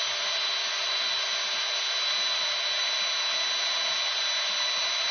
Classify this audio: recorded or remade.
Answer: recorded